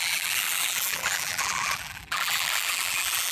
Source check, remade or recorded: remade